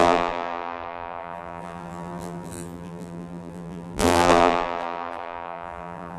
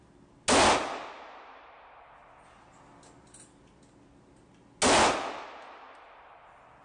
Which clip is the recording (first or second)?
second